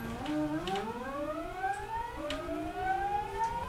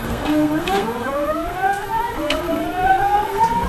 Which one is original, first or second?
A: first